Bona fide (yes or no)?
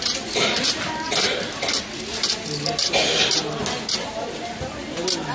yes